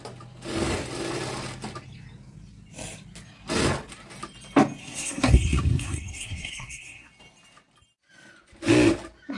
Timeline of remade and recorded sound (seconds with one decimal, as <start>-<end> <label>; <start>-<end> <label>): 0.0-4.8 recorded; 4.8-7.1 remade; 7.1-9.4 recorded